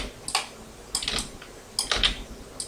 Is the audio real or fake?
real